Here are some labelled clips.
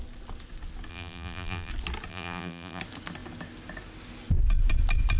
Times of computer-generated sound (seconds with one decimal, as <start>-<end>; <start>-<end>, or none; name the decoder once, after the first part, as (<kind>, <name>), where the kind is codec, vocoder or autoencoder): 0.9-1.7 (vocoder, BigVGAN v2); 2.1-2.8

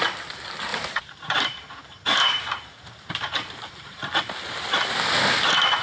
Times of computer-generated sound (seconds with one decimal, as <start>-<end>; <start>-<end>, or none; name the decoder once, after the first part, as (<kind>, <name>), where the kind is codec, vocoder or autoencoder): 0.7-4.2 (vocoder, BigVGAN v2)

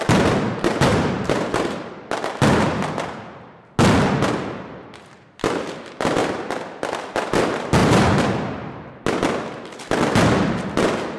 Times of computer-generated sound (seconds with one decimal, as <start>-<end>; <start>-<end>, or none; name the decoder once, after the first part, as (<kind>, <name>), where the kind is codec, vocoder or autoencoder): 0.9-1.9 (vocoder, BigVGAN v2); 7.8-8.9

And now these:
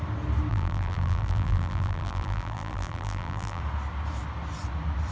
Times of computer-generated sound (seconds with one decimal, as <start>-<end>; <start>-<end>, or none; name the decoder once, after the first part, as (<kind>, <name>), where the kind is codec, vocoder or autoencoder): 0.5-3.6 (vocoder, BigVGAN v2)